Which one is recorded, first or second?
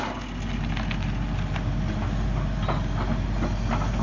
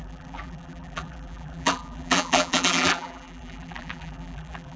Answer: first